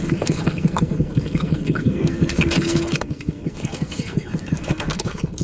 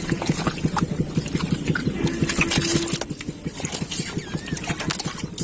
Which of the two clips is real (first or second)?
second